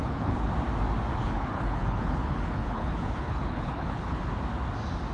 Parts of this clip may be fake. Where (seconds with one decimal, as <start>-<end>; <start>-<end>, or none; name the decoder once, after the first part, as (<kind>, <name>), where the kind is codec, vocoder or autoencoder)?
0.0-0.5 (codec, HILCodec); 1.1-4.2